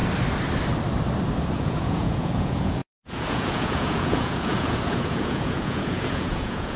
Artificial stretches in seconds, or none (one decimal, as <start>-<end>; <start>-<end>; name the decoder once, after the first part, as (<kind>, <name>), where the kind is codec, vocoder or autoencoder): 1.5-6.8 (vocoder, Vocos)